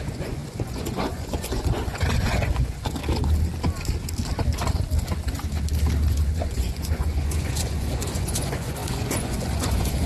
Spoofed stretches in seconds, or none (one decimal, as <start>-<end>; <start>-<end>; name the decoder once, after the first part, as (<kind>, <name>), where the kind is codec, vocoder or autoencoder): 0.0-3.0 (vocoder, Vocos); 6.1-10.1